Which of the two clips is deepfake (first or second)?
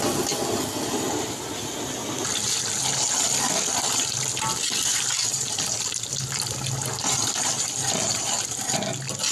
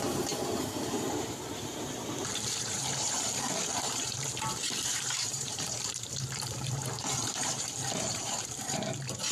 second